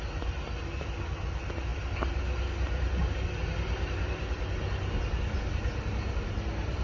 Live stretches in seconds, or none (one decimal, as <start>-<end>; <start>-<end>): 0.0-6.8

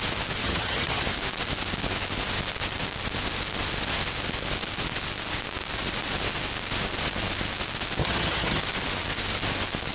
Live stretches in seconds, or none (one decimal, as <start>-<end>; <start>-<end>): 0.0-0.4; 1.0-8.0; 8.6-9.9

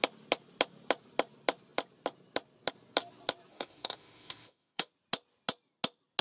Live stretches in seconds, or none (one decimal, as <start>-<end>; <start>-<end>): 0.0-3.5; 4.9-6.2

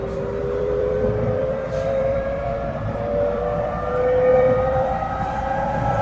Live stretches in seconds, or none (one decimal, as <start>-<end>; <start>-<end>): 0.0-0.4; 3.9-4.3; 5.1-6.0

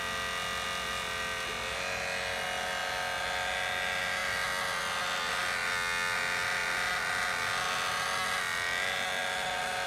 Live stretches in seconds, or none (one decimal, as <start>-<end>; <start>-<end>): 0.0-9.9

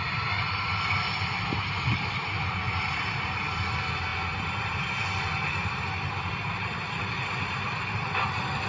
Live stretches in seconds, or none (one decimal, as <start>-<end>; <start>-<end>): 0.0-8.7